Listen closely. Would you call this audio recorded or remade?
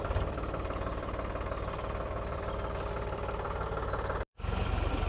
remade